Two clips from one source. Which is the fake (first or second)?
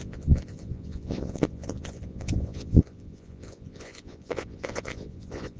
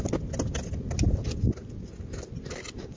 first